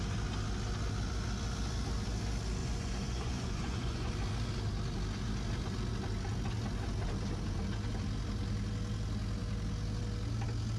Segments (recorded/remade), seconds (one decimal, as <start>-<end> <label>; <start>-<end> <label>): 0.0-2.6 recorded; 2.6-4.1 remade; 4.1-10.8 recorded